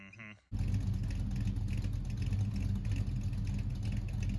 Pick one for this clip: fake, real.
real